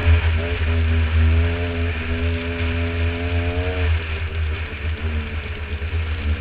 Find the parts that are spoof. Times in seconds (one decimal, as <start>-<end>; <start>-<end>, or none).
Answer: none